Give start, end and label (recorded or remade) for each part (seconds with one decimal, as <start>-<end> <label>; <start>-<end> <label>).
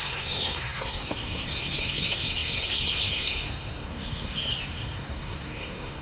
0.0-6.0 remade